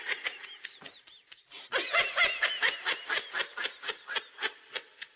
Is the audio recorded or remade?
recorded